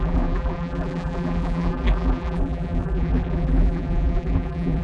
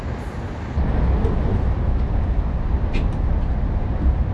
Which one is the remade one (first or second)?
first